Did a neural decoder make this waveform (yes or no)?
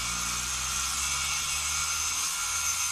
no